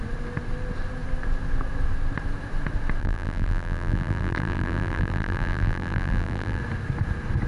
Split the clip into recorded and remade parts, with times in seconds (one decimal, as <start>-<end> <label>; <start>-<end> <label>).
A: 0.0-3.0 recorded; 3.0-6.6 remade; 6.6-7.5 recorded